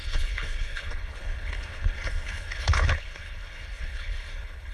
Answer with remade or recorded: remade